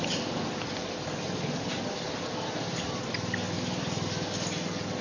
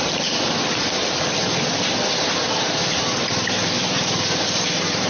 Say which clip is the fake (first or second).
second